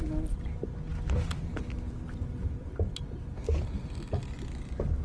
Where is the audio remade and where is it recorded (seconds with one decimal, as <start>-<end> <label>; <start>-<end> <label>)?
0.0-5.0 recorded